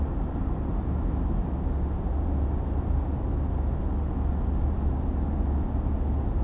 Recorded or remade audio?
recorded